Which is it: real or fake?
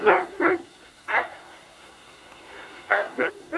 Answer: fake